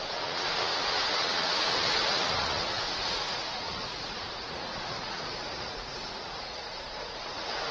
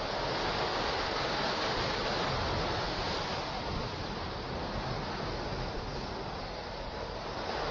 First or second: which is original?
second